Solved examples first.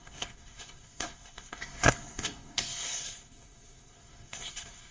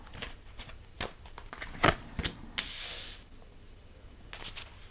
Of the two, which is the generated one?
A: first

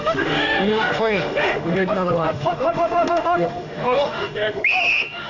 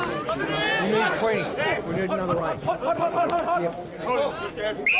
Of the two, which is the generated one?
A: first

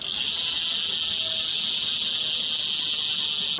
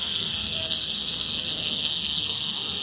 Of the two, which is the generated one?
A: second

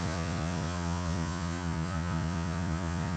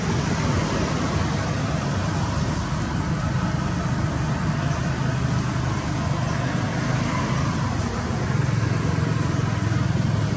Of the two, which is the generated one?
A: first